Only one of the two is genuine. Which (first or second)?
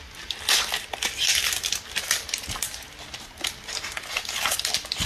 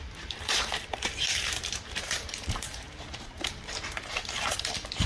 first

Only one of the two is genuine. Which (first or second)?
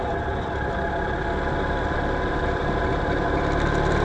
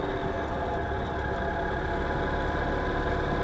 second